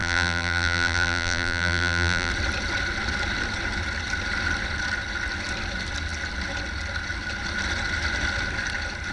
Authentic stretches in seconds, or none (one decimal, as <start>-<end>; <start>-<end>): 2.3-9.1

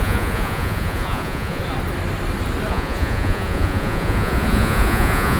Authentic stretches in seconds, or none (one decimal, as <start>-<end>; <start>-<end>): 1.6-2.7